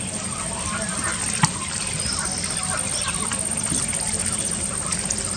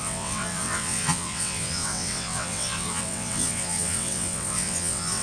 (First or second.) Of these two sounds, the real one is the first